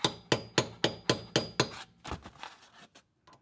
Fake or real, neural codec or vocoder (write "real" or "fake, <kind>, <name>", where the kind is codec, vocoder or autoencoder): real